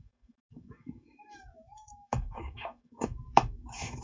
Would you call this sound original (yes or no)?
no